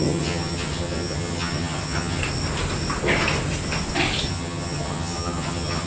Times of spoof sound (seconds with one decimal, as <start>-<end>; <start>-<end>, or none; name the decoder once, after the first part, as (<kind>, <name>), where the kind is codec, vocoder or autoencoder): 0.0-2.2 (vocoder, HiFi-GAN); 4.3-5.9